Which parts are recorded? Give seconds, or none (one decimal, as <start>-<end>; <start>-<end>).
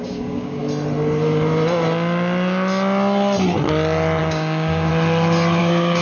0.6-4.2; 4.9-5.6